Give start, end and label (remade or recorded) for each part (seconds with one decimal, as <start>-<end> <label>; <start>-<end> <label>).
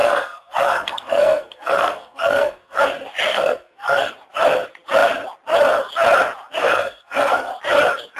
0.0-2.8 remade; 2.8-3.3 recorded; 3.3-4.1 remade; 4.1-6.6 recorded; 6.6-7.5 remade; 7.5-8.2 recorded